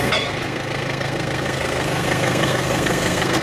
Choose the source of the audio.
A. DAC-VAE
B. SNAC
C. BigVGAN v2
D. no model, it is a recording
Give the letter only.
B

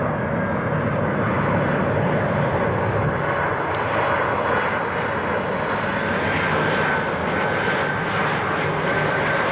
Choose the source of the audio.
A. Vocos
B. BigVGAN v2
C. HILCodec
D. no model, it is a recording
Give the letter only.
D